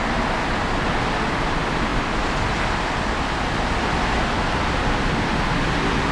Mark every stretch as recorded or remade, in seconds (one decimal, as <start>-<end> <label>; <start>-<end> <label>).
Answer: 0.0-1.9 recorded; 1.9-3.5 remade; 3.5-4.8 recorded; 4.8-5.4 remade; 5.4-6.1 recorded